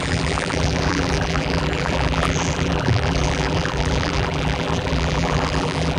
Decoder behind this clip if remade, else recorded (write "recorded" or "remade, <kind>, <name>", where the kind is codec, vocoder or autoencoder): remade, vocoder, BigVGAN v2